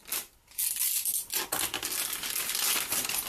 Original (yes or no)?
yes